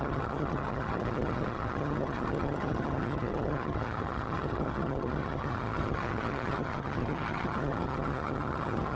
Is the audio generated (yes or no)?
yes